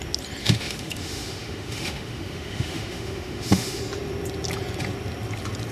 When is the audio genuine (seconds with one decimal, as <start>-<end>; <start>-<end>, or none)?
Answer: 0.0-0.4; 3.8-5.7